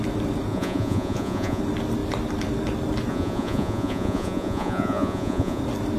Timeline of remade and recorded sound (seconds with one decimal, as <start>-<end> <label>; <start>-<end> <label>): 0.0-0.5 recorded; 0.5-1.6 remade; 1.6-3.1 recorded; 3.1-5.6 remade; 5.6-6.0 recorded

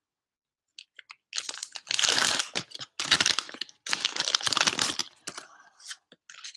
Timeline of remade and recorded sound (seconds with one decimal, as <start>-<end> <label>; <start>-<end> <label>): 0.0-6.6 recorded

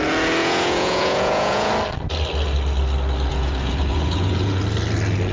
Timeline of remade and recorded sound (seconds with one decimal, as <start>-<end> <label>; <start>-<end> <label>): 0.0-0.4 recorded; 0.4-1.7 remade; 1.7-3.3 recorded; 3.3-4.6 remade; 4.6-5.3 recorded